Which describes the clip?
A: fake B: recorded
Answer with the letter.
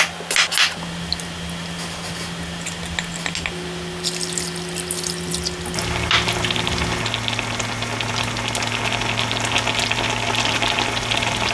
B